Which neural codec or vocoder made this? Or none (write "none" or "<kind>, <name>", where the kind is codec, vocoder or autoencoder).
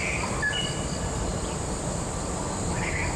none